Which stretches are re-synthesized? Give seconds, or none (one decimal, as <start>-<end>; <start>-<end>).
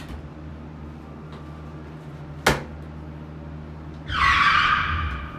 none